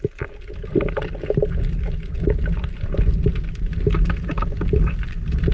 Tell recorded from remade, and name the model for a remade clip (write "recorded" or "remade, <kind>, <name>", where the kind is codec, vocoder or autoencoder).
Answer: recorded